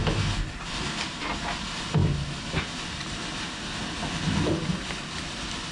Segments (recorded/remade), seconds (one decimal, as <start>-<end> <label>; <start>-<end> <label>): 0.0-5.7 recorded